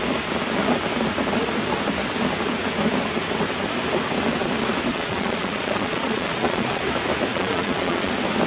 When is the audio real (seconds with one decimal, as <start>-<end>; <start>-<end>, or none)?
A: 0.0-4.9; 6.8-7.3; 8.1-8.5